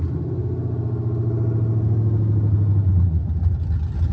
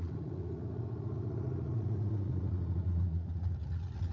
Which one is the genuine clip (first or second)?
first